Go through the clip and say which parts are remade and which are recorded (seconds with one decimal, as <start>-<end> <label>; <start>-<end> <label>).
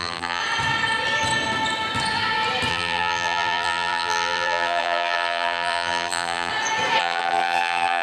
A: 0.0-0.4 remade; 0.4-2.7 recorded; 2.7-6.5 remade; 6.5-7.0 recorded; 7.0-8.0 remade